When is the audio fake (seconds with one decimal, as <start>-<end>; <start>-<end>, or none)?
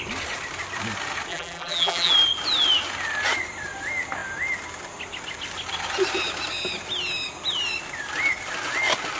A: 1.3-2.1